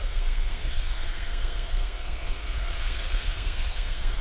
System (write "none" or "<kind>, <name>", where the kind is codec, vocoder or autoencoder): codec, SNAC